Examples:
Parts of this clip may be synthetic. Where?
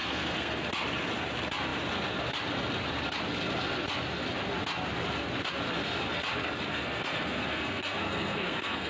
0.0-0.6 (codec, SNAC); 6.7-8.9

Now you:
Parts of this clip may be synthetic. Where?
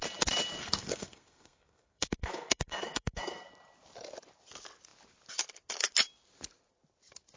0.6-3.5 (codec, SNAC)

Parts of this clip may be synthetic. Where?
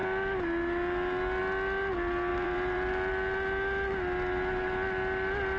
2.3-3.1 (vocoder, BigVGAN v2)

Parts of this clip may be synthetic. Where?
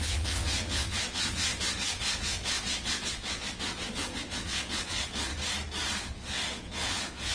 0.0-5.3 (vocoder, Vocos); 6.0-7.3